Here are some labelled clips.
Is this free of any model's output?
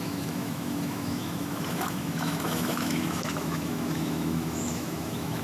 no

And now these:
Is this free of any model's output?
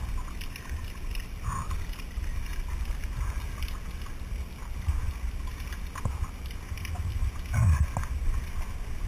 yes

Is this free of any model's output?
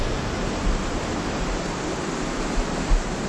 yes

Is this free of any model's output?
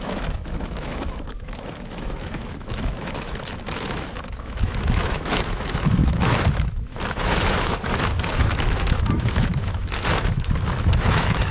no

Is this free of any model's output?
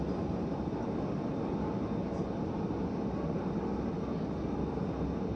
yes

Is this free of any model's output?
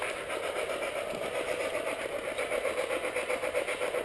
yes